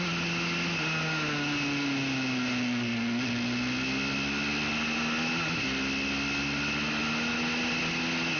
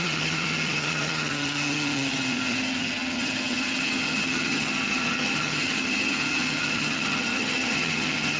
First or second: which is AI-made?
second